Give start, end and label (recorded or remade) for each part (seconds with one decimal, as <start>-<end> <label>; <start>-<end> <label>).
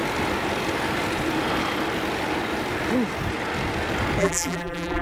0.0-4.2 recorded; 4.2-5.0 remade